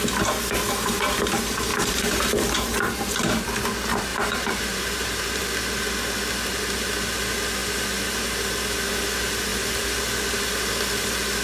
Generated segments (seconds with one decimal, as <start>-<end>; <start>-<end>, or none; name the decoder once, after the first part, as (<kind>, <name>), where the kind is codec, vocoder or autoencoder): 1.7-2.8 (vocoder, BigVGAN v2); 4.1-5.4